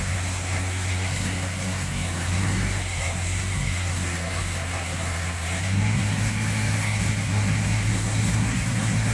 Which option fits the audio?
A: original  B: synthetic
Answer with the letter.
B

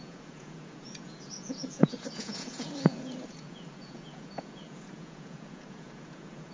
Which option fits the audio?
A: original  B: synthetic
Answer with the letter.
B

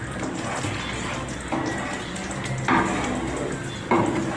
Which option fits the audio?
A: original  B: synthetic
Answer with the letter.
A